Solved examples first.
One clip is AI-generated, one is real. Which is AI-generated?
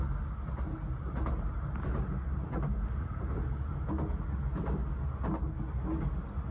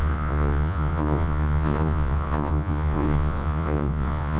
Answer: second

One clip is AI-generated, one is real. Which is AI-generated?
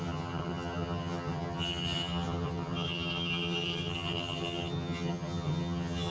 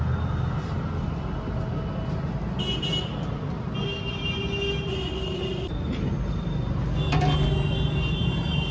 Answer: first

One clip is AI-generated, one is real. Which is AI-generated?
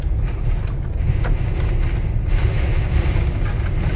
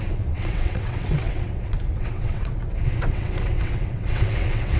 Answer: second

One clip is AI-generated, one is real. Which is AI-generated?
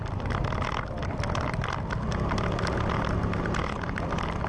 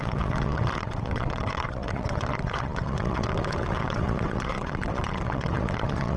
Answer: second